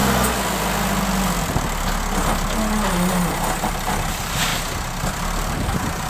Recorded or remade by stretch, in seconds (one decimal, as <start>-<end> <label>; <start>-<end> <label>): 0.0-3.7 recorded; 3.7-4.5 remade; 4.5-5.1 recorded; 5.1-6.1 remade